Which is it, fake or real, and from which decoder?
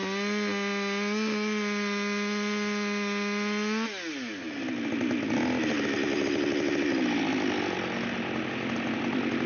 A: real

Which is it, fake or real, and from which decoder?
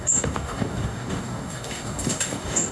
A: fake, codec, DAC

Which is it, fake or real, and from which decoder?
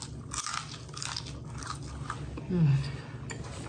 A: real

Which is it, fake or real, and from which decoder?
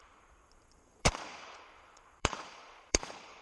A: fake, vocoder, Vocos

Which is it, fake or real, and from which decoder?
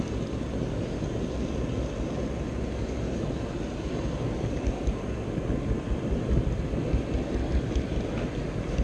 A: real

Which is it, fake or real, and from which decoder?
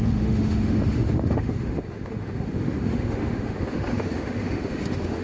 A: fake, autoencoder, DAC-VAE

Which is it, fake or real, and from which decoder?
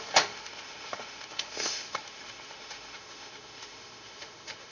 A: fake, autoencoder, DAC-VAE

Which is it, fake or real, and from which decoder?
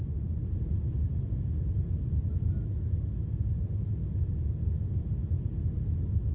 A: real